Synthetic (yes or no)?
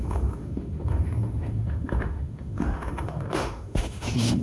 yes